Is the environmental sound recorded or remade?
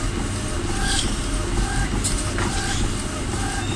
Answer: recorded